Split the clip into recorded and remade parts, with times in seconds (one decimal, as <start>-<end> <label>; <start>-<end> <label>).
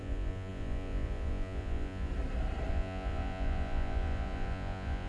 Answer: 0.0-2.1 remade; 2.1-2.7 recorded; 2.7-5.1 remade